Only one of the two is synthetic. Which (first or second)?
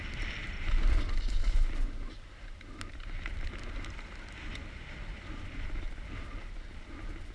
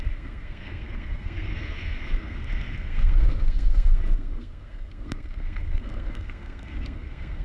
second